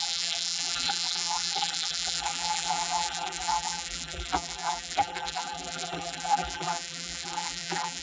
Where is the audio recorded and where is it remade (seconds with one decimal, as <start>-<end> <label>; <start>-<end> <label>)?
0.0-8.0 remade